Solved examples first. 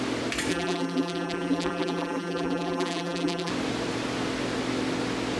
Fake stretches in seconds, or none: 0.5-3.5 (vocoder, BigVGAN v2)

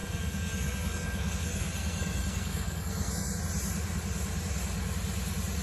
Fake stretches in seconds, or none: 0.0-3.4 (codec, SNAC)

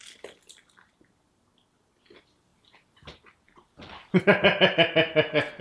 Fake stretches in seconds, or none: 2.5-4.2 (vocoder, BigVGAN v2)

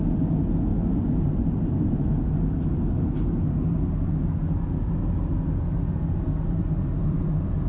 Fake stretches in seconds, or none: 0.7-2.7 (vocoder, BigVGAN v2)

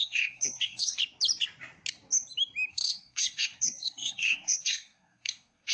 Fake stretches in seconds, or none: 0.0-1.0 (codec, SNAC); 2.7-5.7

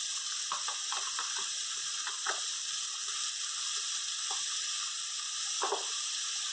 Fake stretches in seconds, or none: 1.8-2.5 (vocoder, Vocos)